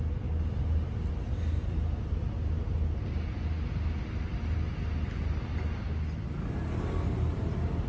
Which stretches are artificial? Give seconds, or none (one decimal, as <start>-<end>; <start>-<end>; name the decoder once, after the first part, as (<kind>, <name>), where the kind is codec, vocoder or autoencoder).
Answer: 1.3-2.2 (vocoder, BigVGAN v2)